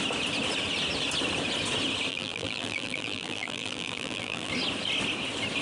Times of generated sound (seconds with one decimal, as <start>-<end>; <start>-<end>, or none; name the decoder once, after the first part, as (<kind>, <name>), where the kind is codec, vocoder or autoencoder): 2.1-4.5 (vocoder, BigVGAN v2)